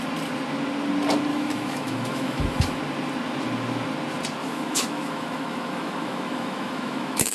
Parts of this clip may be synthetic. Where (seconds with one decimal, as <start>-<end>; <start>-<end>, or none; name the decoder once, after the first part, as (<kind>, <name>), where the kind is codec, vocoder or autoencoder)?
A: 1.3-2.8 (autoencoder, DAC-VAE); 4.4-7.3